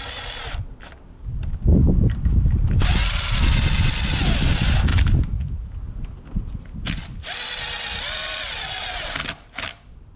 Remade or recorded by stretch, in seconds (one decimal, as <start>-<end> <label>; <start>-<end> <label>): 0.0-10.2 recorded